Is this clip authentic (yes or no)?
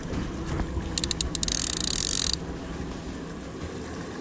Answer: yes